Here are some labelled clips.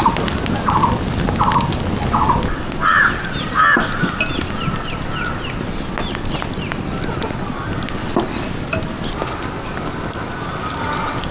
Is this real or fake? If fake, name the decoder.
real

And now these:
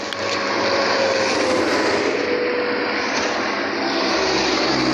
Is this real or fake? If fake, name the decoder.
real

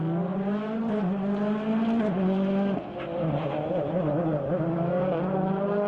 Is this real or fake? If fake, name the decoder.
real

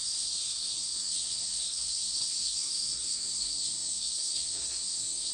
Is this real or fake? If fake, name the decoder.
fake, codec, SNAC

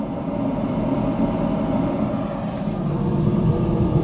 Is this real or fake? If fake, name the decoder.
real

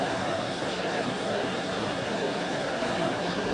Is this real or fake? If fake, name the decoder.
fake, codec, SNAC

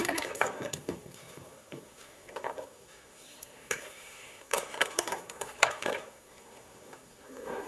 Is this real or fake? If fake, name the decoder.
fake, codec, SNAC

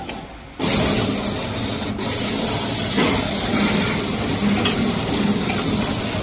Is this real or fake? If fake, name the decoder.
real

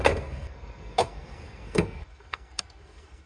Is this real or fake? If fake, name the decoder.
fake, codec, SNAC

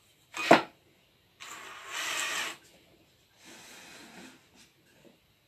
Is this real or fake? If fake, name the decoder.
real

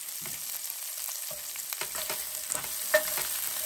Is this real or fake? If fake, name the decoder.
real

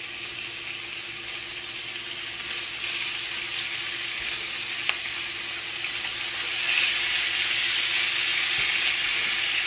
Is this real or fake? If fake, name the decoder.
real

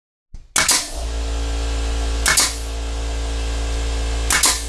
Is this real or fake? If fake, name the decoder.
real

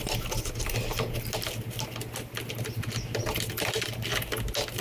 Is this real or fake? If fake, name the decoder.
real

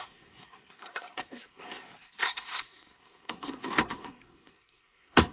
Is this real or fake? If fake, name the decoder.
fake, codec, SNAC